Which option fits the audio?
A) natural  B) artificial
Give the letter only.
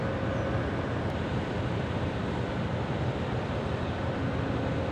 B